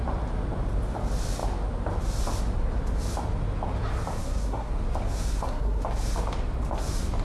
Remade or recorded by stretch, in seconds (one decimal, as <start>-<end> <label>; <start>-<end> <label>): 0.0-4.2 recorded; 4.2-4.7 remade; 4.7-5.3 recorded; 5.3-5.8 remade; 5.8-7.2 recorded